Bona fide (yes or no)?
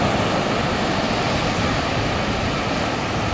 yes